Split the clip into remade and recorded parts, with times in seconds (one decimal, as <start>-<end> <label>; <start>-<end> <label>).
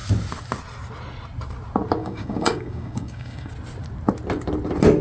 0.0-2.0 recorded; 2.0-3.5 remade; 3.5-5.0 recorded